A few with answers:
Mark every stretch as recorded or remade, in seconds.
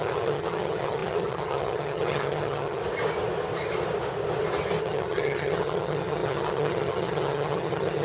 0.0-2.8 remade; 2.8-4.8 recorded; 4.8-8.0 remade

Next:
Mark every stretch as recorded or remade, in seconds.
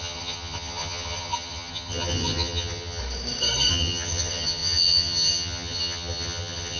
0.0-3.0 remade; 3.0-3.7 recorded; 3.7-6.8 remade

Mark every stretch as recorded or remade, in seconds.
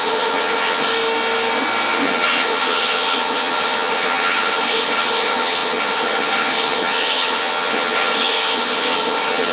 0.0-0.9 remade; 0.9-1.9 recorded; 1.9-9.5 remade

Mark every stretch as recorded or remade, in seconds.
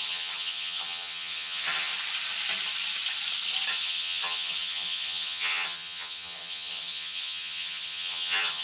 0.0-1.9 remade; 1.9-3.7 recorded; 3.7-8.6 remade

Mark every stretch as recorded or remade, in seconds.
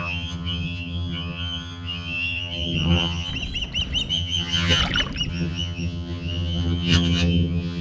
0.0-3.3 remade; 3.3-4.1 recorded; 4.1-4.8 remade; 4.8-5.3 recorded; 5.3-7.8 remade